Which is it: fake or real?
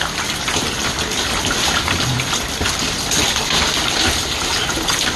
real